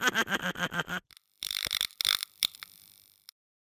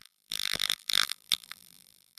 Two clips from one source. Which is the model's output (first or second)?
second